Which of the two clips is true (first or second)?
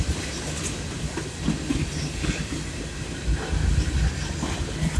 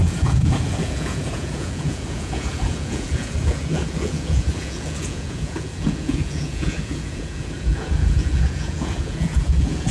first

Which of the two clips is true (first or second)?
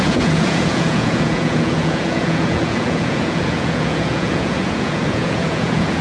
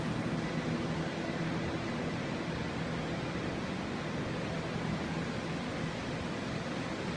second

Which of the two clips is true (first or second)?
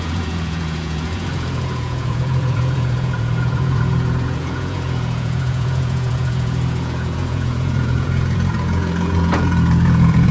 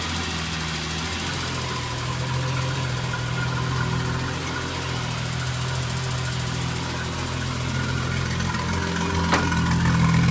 second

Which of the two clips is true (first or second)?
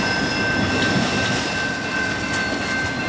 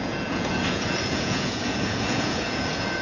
first